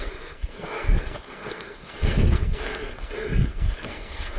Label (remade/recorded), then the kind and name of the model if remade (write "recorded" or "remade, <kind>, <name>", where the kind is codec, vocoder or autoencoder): remade, codec, SNAC